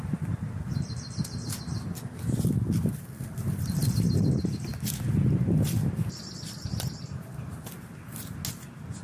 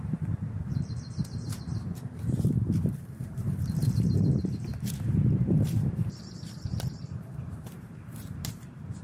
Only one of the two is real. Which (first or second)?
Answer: first